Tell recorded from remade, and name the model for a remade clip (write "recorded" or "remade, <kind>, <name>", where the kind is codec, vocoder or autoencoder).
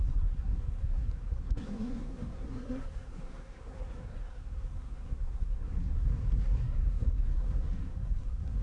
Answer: remade, codec, SNAC